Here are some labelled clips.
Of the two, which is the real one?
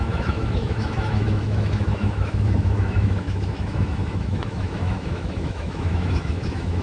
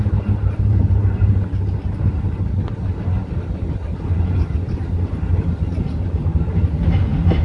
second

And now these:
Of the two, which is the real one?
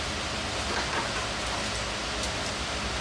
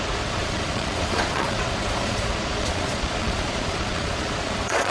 first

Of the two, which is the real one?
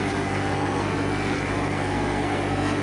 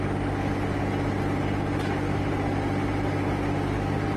second